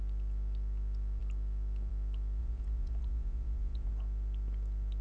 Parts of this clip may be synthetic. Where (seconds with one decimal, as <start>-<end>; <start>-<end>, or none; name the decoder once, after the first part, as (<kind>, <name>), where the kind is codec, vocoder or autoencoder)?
2.4-3.9 (vocoder, Vocos)